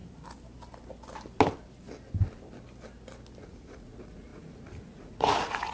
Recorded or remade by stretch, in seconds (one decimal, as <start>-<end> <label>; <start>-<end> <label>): 0.0-3.4 recorded; 3.4-5.7 remade